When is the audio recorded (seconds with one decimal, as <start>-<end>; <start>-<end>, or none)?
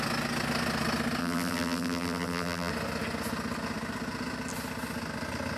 0.0-1.2; 2.7-5.6